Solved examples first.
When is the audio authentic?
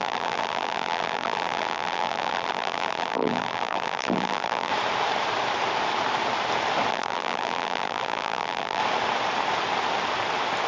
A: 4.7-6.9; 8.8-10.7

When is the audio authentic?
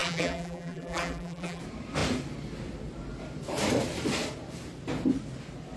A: 1.6-5.8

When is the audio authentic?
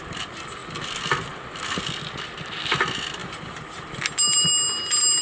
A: 0.0-3.2; 3.8-5.2